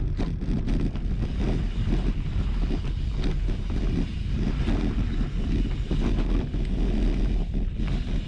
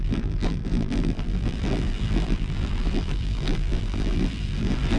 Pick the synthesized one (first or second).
second